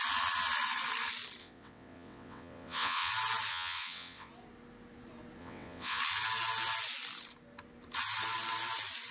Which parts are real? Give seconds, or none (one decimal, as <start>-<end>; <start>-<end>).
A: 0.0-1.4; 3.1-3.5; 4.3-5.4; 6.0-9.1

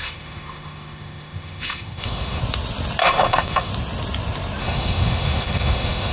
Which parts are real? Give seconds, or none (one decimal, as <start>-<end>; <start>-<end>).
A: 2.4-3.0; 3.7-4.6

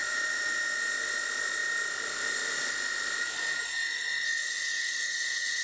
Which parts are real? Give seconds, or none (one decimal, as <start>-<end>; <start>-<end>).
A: 0.6-5.6

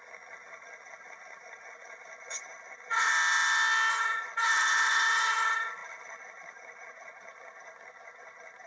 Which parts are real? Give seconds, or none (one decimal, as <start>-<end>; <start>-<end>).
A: 3.1-3.9